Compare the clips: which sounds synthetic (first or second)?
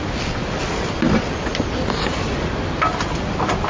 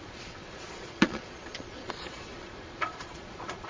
second